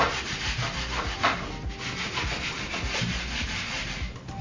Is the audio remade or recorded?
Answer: recorded